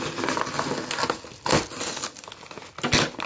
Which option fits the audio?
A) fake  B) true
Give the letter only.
B